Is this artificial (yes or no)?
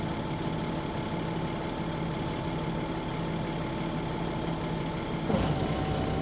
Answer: no